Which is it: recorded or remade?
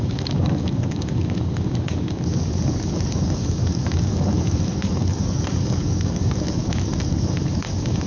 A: remade